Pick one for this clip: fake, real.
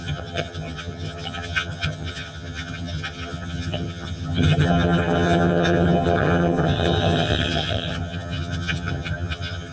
fake